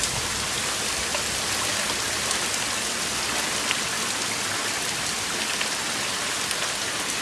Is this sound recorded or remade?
recorded